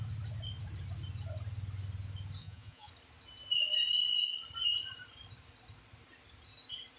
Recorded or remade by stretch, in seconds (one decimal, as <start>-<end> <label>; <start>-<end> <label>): 0.0-2.4 recorded; 2.4-2.9 remade; 2.9-7.0 recorded